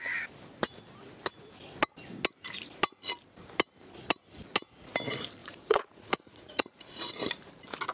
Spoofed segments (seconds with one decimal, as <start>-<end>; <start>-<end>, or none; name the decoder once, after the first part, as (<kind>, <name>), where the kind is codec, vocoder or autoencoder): 5.4-7.2 (vocoder, Vocos)